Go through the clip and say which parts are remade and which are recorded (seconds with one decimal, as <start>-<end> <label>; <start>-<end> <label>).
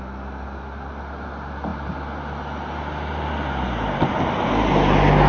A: 0.0-5.3 recorded